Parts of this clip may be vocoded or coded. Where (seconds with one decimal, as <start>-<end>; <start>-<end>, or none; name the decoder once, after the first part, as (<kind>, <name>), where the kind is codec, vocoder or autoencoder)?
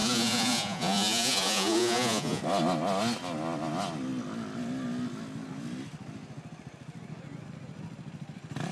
0.0-2.4 (vocoder, Vocos)